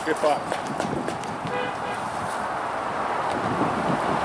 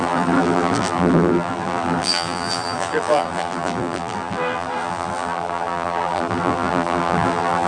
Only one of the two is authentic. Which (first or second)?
first